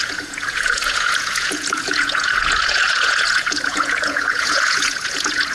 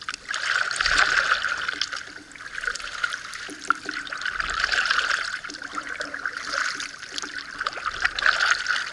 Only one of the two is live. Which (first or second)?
second